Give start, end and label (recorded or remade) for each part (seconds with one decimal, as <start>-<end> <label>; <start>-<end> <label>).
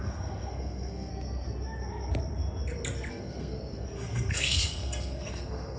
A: 0.0-1.1 remade; 1.1-3.1 recorded; 3.1-5.8 remade